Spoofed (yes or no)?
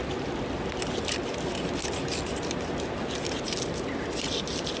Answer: no